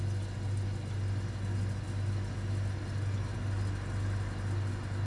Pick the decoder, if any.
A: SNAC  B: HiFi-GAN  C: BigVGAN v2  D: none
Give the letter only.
D